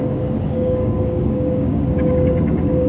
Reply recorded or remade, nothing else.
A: remade